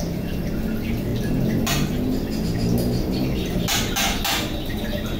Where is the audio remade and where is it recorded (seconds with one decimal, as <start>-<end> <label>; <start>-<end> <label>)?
0.0-5.2 recorded